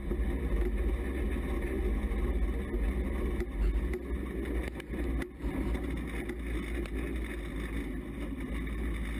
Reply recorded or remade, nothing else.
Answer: recorded